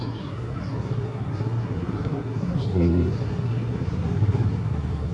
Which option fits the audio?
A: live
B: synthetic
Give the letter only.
B